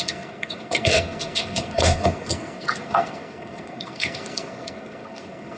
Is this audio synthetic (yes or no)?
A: yes